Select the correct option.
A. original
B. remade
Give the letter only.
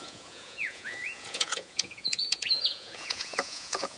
B